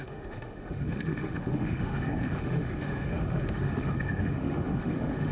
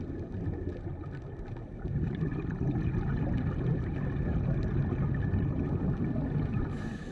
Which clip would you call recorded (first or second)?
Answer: second